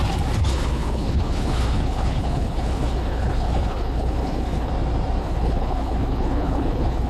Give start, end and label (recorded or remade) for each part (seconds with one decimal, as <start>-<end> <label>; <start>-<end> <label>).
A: 0.0-0.4 recorded; 0.4-4.7 remade; 4.7-5.2 recorded; 5.2-7.1 remade